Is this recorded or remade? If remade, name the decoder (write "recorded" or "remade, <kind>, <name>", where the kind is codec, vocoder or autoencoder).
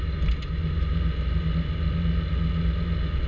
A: recorded